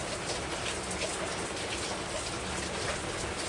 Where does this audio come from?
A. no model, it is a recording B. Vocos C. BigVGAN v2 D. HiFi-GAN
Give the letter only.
A